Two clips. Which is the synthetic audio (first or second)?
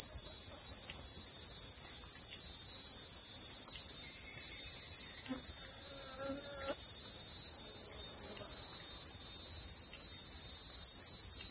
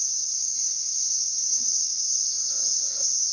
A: second